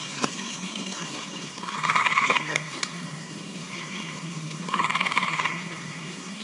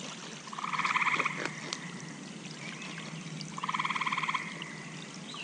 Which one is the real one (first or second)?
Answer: second